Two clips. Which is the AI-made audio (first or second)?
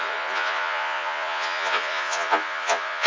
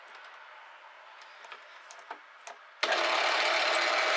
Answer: first